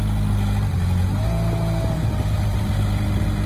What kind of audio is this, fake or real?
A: real